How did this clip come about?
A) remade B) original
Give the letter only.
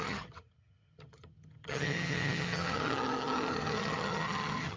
A